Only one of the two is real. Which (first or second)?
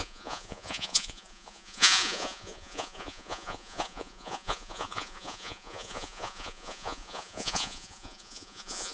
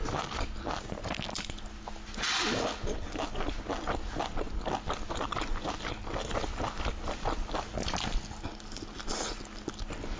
second